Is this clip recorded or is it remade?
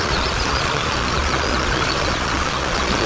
remade